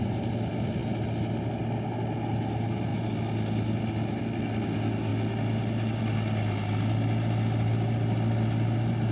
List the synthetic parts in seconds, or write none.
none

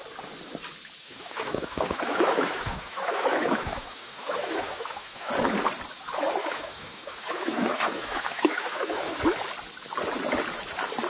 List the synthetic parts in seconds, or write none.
1.0-5.3 (autoencoder, DAC-VAE); 6.4-9.2

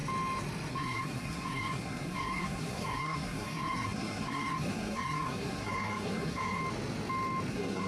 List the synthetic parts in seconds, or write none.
0.7-6.6 (codec, SNAC); 7.5-7.9

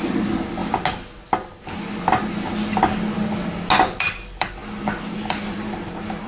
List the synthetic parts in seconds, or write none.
0.0-0.6 (vocoder, BigVGAN v2); 4.0-4.6; 5.2-6.3

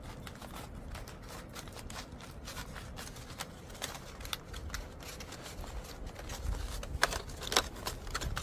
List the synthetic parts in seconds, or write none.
none